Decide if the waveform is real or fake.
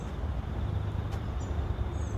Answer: real